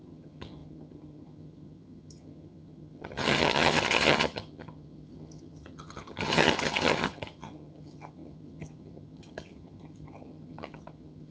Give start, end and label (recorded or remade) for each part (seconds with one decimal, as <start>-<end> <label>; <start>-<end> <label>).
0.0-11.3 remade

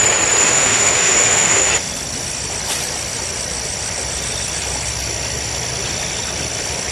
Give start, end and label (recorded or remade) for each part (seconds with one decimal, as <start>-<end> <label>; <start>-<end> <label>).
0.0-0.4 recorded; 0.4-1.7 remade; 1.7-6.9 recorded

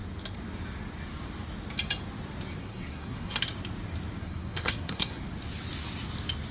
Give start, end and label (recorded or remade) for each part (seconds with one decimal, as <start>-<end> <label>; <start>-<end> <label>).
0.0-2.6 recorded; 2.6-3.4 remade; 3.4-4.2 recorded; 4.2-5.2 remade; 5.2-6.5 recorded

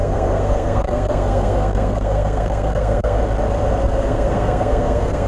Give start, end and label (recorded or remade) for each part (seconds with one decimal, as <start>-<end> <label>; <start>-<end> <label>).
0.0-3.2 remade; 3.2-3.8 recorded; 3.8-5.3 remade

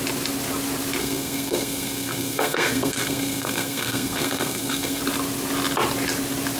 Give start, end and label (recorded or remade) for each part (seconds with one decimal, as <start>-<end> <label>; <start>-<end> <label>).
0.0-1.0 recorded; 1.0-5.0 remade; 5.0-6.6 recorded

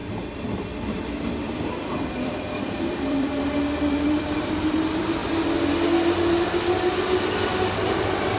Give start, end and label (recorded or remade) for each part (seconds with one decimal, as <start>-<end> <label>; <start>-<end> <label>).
0.0-5.2 remade; 5.2-7.7 recorded; 7.7-8.4 remade